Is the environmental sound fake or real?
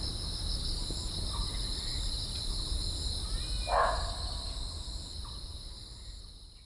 real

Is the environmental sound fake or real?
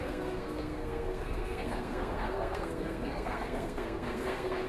fake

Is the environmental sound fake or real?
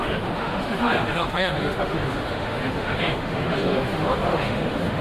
fake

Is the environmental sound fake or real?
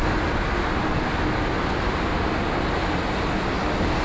real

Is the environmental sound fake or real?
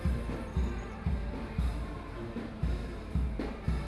fake